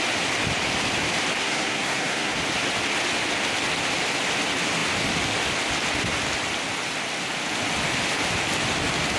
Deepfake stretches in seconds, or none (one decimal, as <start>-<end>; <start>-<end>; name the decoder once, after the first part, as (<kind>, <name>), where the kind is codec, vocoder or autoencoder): 1.4-2.4 (codec, SNAC)